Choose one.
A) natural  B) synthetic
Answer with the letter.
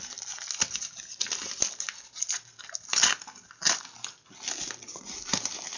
A